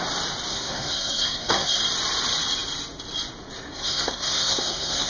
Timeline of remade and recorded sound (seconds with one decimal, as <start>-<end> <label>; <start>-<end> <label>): 0.0-0.5 recorded; 0.5-1.8 remade; 1.8-3.7 recorded; 3.7-5.1 remade

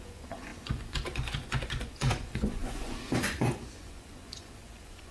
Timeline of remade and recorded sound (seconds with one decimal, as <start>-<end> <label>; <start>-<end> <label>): 0.0-5.1 remade

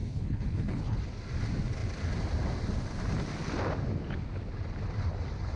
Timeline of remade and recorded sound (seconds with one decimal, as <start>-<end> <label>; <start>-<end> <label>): 0.0-1.0 remade; 1.0-5.6 recorded

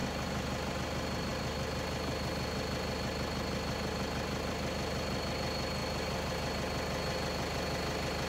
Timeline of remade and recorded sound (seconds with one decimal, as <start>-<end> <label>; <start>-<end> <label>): 0.0-0.7 remade; 0.7-8.3 recorded

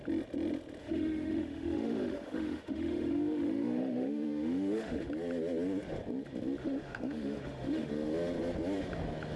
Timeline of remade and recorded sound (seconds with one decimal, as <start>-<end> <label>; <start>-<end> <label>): 0.0-0.8 recorded; 0.8-5.1 remade; 5.1-6.6 recorded; 6.6-7.9 remade; 7.9-9.4 recorded

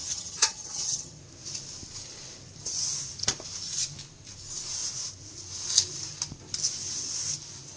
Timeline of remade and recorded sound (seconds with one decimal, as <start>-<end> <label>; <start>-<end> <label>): 0.0-1.2 remade; 1.2-7.8 recorded

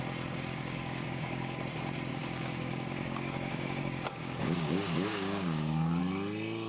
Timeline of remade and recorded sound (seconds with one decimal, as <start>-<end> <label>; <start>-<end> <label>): 0.0-0.5 recorded; 0.5-1.6 remade; 1.6-2.1 recorded; 2.1-6.0 remade; 6.0-6.7 recorded